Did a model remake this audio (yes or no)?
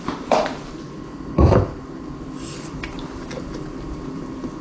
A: yes